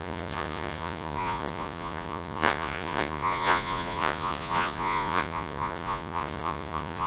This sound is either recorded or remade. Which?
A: remade